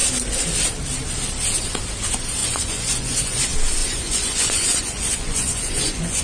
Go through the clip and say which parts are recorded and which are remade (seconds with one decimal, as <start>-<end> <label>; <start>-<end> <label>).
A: 0.0-2.4 recorded; 2.4-3.4 remade; 3.4-3.8 recorded; 3.8-6.2 remade